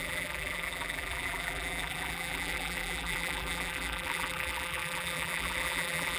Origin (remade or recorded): remade